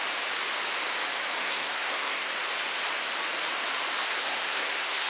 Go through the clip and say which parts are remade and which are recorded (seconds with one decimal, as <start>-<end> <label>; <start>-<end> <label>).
0.0-1.4 recorded; 1.4-2.3 remade; 2.3-4.2 recorded; 4.2-5.1 remade